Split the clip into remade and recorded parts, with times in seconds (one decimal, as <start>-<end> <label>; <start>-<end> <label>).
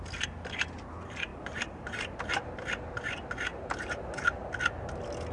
0.0-1.3 recorded; 1.3-2.1 remade; 2.1-3.5 recorded; 3.5-4.6 remade; 4.6-5.3 recorded